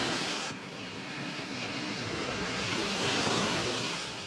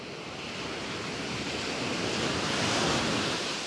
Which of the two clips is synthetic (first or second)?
first